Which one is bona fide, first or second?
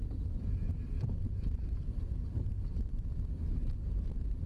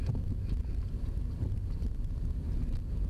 second